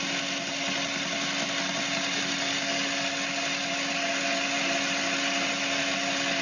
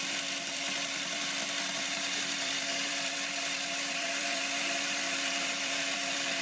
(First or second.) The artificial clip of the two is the second